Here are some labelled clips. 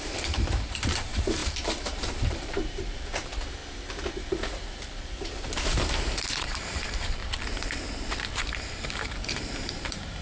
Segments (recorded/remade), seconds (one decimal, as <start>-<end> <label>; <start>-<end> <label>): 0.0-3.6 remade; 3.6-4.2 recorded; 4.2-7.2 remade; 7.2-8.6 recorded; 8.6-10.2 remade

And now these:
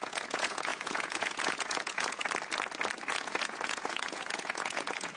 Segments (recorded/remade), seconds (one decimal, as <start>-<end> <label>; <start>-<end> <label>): 0.0-2.2 remade; 2.2-3.1 recorded; 3.1-5.2 remade

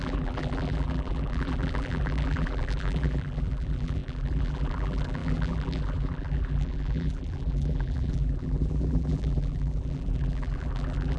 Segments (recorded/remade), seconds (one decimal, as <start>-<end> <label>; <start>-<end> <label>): 0.0-11.2 remade